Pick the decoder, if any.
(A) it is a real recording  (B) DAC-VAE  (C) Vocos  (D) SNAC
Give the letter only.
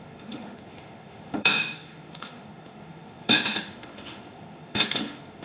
B